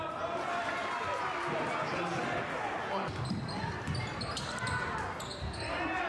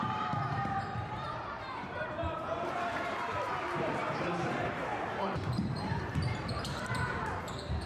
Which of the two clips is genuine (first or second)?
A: first